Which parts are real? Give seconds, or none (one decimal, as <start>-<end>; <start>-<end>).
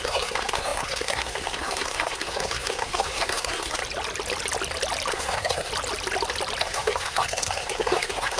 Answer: 3.8-5.1; 5.7-6.6